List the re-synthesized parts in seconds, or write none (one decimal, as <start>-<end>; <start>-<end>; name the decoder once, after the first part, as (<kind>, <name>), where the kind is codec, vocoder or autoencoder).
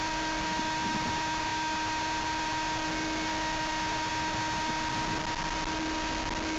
none